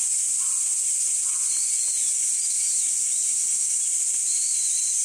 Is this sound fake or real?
real